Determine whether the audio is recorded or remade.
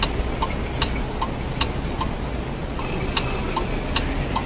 recorded